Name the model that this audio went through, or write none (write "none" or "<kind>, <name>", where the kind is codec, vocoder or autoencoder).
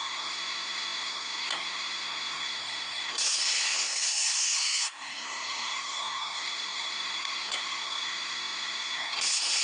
codec, SNAC